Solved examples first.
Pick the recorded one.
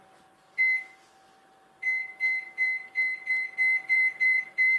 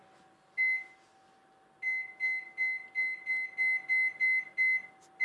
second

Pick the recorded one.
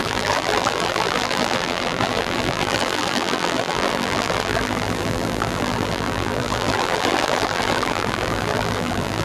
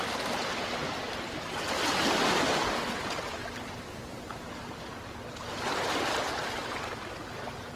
second